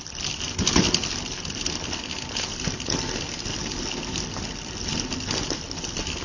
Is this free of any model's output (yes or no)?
yes